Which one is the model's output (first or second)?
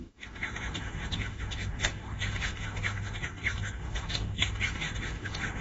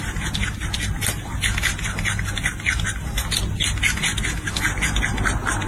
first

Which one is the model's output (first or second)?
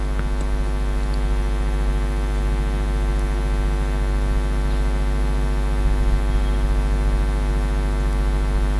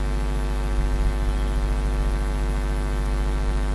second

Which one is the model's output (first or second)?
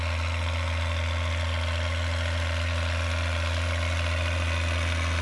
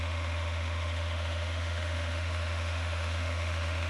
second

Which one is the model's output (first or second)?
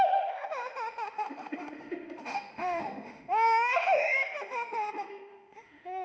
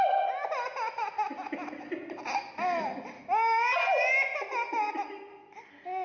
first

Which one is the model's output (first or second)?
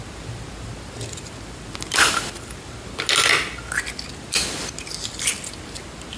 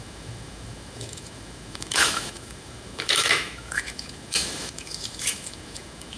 second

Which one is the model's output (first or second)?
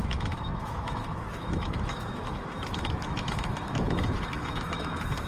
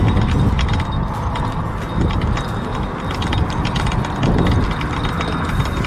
first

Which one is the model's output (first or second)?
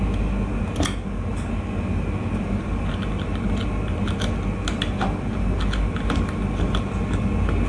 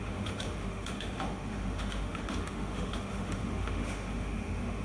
second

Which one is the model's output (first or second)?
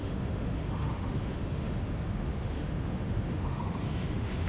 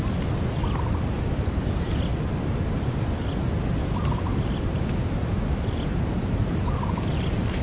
first